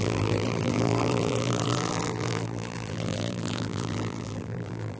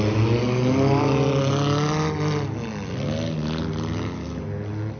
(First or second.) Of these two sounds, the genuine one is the second